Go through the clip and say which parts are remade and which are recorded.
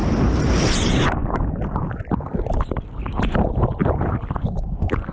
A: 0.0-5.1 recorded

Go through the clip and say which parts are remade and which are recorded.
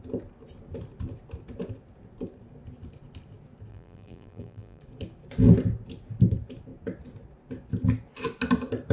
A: 0.0-3.7 recorded; 3.7-4.8 remade; 4.8-8.9 recorded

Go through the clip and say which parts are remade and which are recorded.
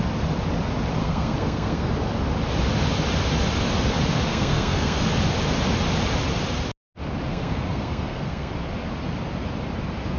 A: 0.0-1.0 recorded; 1.0-1.9 remade; 1.9-4.3 recorded; 4.3-5.0 remade; 5.0-7.3 recorded; 7.3-8.5 remade; 8.5-10.2 recorded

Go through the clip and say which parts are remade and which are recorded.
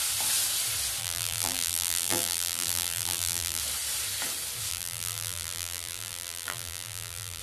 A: 0.0-1.0 recorded; 1.0-3.6 remade; 3.6-4.7 recorded; 4.7-7.4 remade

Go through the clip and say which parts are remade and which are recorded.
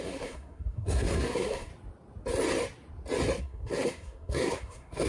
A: 0.0-1.7 remade; 1.7-3.4 recorded; 3.4-5.1 remade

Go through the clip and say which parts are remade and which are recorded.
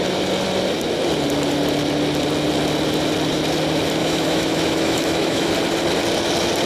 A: 0.0-4.0 recorded; 4.0-5.5 remade; 5.5-6.7 recorded